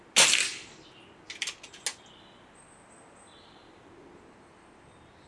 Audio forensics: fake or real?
real